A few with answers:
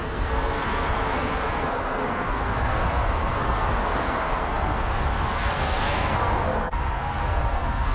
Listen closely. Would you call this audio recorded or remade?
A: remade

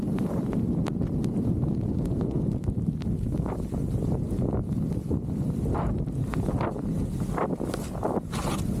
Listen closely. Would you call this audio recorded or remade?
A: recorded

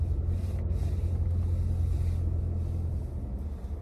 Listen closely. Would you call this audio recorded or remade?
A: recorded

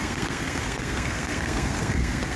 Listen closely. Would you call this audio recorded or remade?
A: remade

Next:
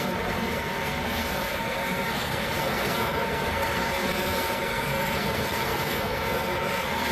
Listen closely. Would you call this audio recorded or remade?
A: remade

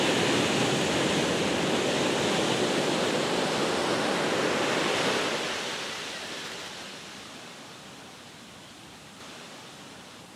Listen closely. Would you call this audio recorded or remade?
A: recorded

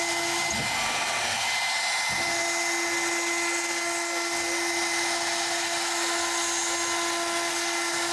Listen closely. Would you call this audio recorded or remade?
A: recorded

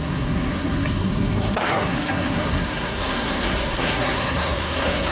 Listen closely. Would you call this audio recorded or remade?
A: remade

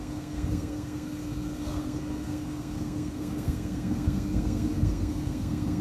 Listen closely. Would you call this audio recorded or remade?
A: remade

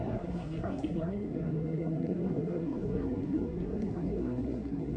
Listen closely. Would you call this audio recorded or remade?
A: remade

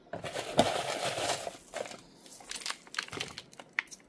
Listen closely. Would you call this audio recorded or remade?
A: recorded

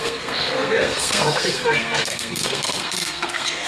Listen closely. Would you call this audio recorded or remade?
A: remade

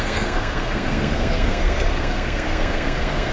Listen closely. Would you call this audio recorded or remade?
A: remade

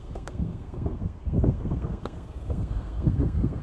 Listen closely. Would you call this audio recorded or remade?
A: remade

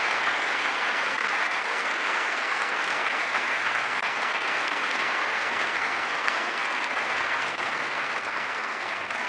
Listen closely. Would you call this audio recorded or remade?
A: remade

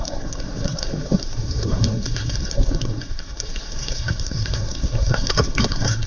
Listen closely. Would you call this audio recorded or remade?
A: remade